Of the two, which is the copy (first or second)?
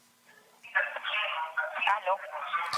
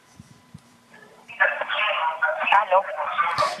second